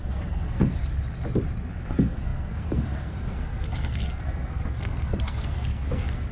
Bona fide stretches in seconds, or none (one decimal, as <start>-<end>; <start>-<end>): 0.8-1.9